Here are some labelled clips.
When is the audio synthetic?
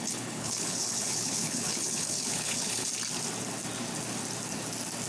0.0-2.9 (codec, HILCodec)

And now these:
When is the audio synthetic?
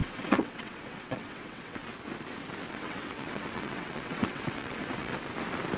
0.0-1.8 (vocoder, WaveNeXt); 2.7-5.1